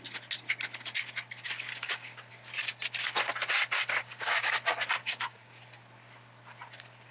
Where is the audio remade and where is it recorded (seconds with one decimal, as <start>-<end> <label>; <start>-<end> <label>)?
0.0-1.7 recorded; 1.7-2.3 remade; 2.3-4.0 recorded; 4.0-4.5 remade; 4.5-5.0 recorded; 5.0-5.6 remade; 5.6-7.1 recorded